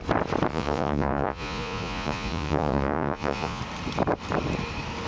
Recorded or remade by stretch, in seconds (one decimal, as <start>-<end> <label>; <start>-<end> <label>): 0.0-0.5 recorded; 0.5-3.6 remade; 3.6-5.1 recorded